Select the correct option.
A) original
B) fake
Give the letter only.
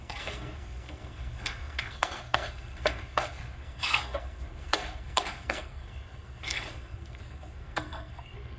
B